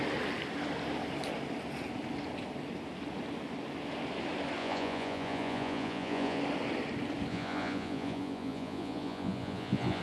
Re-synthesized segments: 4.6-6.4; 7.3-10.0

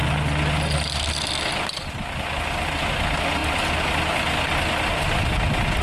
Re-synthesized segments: none

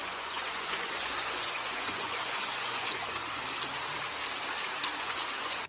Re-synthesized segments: 0.0-3.4; 4.9-5.7

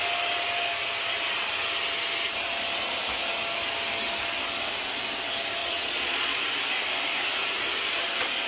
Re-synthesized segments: 5.6-6.4

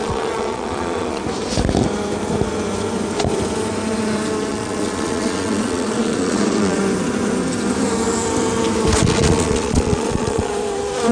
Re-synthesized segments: 0.0-1.2; 4.5-6.8; 9.0-10.5

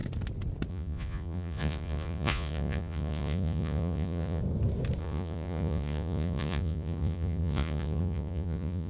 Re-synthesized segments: 0.7-4.4; 5.0-8.9

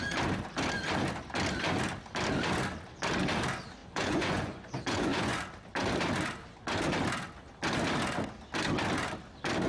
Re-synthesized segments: 3.8-5.4

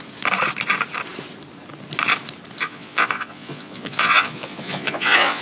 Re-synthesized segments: 2.6-5.4